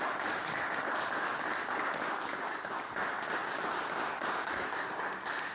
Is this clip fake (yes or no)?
no